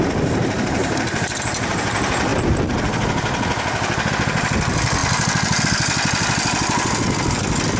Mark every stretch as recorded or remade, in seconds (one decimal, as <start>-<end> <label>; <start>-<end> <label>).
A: 0.0-7.8 recorded